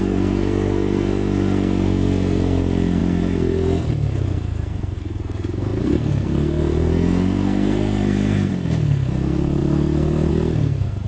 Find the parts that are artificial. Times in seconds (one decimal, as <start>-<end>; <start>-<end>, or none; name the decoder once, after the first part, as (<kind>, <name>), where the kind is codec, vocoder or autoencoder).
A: 0.0-11.1 (codec, SNAC)